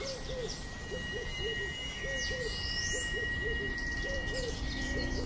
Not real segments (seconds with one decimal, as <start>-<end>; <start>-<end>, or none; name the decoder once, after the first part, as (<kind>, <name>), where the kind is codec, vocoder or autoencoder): 0.0-1.5 (vocoder, BigVGAN v2); 2.3-5.3